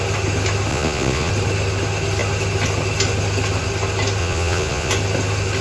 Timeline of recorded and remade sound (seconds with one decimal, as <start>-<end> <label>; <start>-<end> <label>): 0.0-0.7 recorded; 0.7-1.3 remade; 1.3-4.2 recorded; 4.2-4.9 remade; 4.9-5.6 recorded